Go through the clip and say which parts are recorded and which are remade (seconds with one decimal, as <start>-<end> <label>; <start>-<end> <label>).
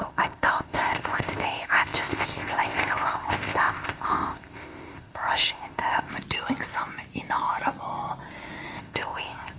0.0-6.1 remade; 6.1-8.8 recorded; 8.8-9.6 remade